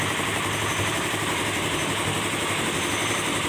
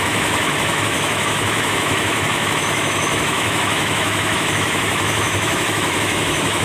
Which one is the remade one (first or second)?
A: second